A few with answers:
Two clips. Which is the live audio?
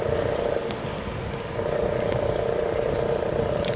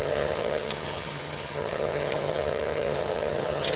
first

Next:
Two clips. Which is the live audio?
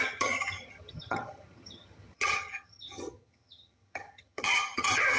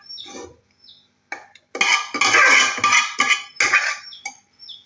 second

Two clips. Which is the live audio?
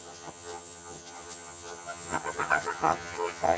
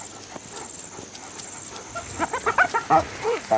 second